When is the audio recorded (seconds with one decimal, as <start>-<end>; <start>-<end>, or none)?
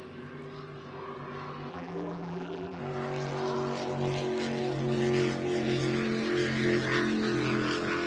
0.0-1.7; 2.8-8.1